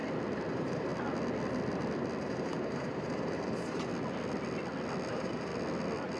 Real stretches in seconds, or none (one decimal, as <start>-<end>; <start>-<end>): 0.0-0.5; 0.9-2.2; 3.9-5.1; 5.5-6.2